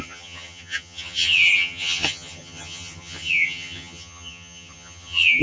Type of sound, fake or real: fake